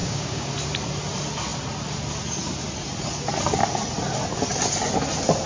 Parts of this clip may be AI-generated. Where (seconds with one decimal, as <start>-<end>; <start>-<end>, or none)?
0.0-0.5